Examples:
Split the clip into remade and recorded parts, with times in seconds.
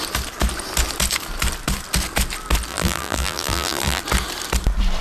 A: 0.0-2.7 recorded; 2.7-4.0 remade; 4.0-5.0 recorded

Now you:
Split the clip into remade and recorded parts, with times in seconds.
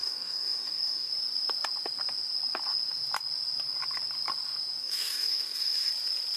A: 0.0-1.1 remade; 1.1-4.8 recorded; 4.8-5.9 remade; 5.9-6.4 recorded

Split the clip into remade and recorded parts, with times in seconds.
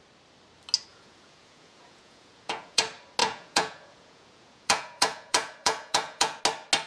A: 0.0-0.9 recorded; 0.9-2.8 remade; 2.8-3.2 recorded; 3.2-6.4 remade; 6.4-6.9 recorded